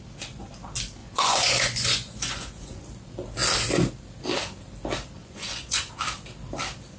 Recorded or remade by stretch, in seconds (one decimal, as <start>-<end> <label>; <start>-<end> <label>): 0.0-1.0 recorded; 1.0-2.8 remade; 2.8-5.2 recorded; 5.2-5.9 remade; 5.9-7.0 recorded